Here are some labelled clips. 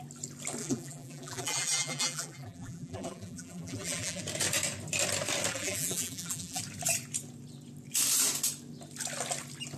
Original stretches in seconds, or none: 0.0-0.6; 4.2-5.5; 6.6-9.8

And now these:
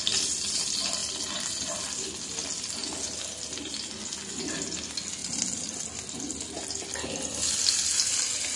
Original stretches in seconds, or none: 0.0-8.6